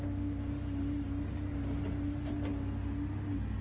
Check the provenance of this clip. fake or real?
real